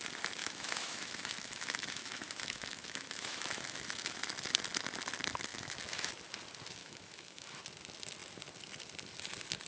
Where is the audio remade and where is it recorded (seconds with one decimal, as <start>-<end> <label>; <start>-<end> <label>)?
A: 0.0-0.4 recorded; 0.4-4.2 remade; 4.2-5.5 recorded; 5.5-6.1 remade; 6.1-6.8 recorded; 6.8-7.6 remade; 7.6-9.7 recorded